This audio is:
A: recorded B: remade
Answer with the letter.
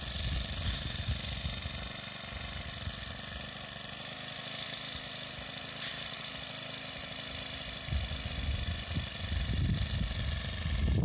A